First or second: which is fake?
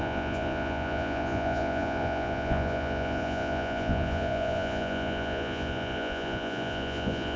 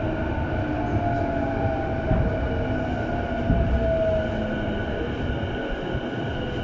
first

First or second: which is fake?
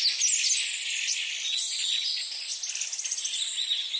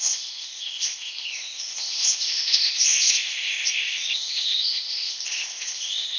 second